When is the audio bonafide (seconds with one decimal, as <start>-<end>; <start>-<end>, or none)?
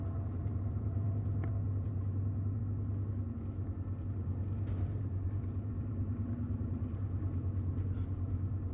2.6-4.0